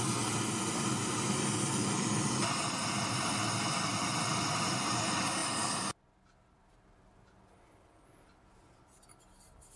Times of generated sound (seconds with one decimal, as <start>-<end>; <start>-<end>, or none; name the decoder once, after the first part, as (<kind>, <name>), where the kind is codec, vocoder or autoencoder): none